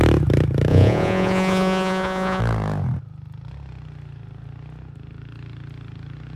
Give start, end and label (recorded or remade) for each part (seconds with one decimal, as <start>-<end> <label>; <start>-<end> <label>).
0.0-0.7 recorded; 0.7-2.4 remade; 2.4-6.4 recorded